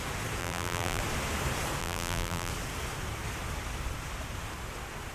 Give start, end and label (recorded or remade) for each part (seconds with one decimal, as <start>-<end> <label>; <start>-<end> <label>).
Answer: 0.0-0.4 recorded; 0.4-1.0 remade; 1.0-1.8 recorded; 1.8-2.5 remade; 2.5-5.1 recorded